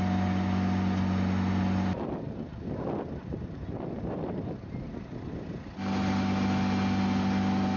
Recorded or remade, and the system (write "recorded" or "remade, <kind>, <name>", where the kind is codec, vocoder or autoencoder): recorded